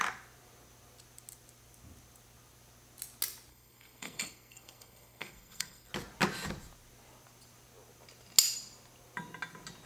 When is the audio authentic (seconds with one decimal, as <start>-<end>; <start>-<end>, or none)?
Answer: 0.0-3.5; 5.9-9.9